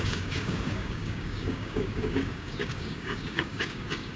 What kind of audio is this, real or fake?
fake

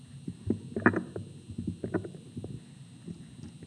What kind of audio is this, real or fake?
real